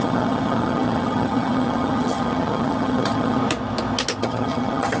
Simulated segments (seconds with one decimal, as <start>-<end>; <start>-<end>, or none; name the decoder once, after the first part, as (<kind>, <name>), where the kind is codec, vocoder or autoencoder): 0.0-3.4 (vocoder, HiFi-GAN); 4.2-5.0

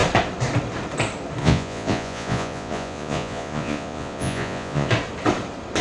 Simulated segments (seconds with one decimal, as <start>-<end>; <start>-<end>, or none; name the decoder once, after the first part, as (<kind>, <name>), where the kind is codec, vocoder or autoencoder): 1.4-4.9 (vocoder, Vocos)

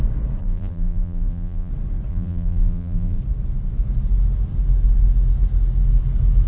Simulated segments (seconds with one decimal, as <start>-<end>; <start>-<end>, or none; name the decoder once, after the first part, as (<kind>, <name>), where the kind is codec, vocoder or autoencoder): 0.4-1.7 (vocoder, BigVGAN v2); 2.1-3.2

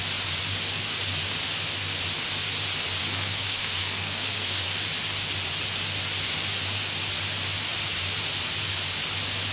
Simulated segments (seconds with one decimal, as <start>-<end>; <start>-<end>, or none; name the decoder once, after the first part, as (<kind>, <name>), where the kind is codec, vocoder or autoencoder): 3.0-4.6 (codec, SNAC)

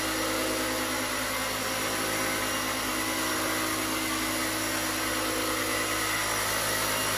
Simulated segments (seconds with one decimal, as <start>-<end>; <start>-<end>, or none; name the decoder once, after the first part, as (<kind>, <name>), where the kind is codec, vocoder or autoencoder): none

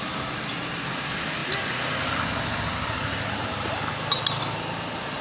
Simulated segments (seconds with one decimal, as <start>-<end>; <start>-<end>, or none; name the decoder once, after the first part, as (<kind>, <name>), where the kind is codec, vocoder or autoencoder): none